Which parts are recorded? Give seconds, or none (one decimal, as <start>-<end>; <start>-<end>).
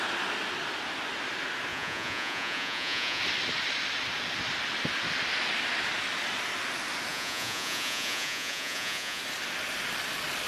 0.0-1.7; 3.2-7.1; 9.2-10.5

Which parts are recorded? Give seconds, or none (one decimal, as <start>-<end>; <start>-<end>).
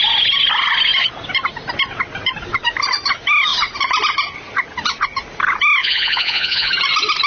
0.0-5.8; 6.7-7.3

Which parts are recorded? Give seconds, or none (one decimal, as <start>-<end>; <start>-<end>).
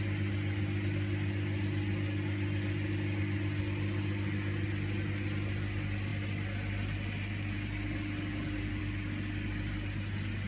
0.0-10.5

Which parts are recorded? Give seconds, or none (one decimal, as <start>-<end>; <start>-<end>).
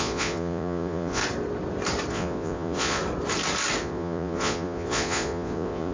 1.2-2.1; 3.0-3.8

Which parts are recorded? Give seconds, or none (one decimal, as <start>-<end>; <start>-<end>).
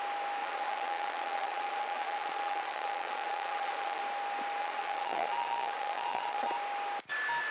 0.0-0.4; 4.0-4.6; 6.5-7.5